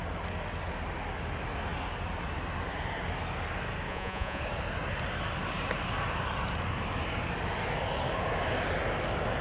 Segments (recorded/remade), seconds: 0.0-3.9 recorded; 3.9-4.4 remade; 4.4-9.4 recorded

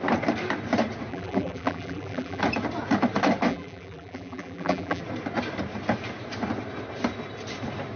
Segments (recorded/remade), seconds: 0.0-1.1 recorded; 1.1-2.4 remade; 2.4-3.5 recorded; 3.5-5.0 remade; 5.0-8.0 recorded

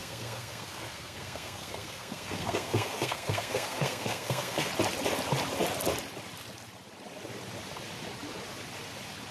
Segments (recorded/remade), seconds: 0.0-4.7 remade; 4.7-9.3 recorded

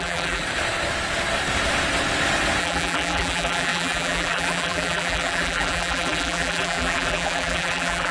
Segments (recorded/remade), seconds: 0.0-0.4 remade; 0.4-2.6 recorded; 2.6-8.1 remade

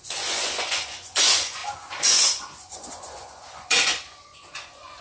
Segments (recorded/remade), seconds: 0.0-5.0 remade

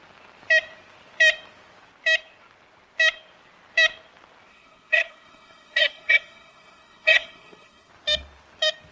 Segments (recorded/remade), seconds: 0.0-4.5 recorded; 4.5-7.9 remade; 7.9-8.9 recorded

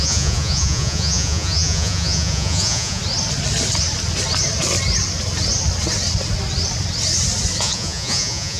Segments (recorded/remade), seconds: 0.0-3.0 remade; 3.0-7.6 recorded; 7.6-8.6 remade